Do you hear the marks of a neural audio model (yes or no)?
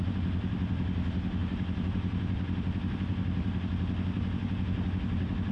no